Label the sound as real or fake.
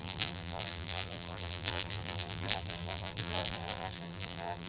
fake